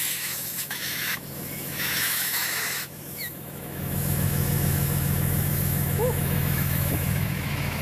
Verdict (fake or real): fake